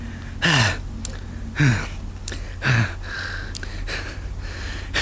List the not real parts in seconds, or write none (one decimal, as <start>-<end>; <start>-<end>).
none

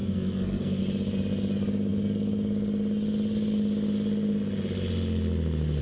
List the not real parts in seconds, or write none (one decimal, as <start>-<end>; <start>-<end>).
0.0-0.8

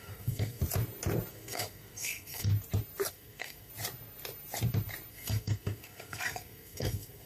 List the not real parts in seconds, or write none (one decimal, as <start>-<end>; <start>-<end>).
0.0-0.6; 1.3-2.5; 3.1-3.7; 5.1-7.3

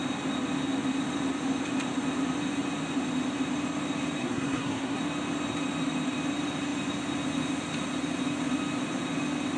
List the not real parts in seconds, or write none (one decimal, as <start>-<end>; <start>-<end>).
4.2-5.0